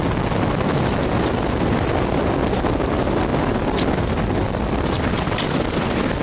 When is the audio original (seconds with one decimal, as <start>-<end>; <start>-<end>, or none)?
0.0-6.2